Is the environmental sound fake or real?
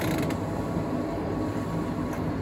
real